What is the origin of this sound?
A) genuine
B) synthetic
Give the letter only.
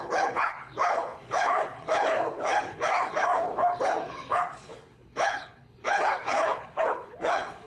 B